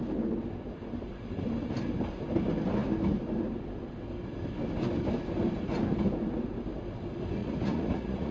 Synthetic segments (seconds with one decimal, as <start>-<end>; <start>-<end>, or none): 7.4-8.3